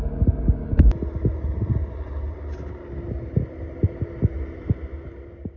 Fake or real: real